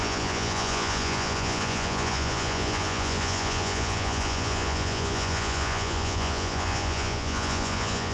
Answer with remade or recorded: remade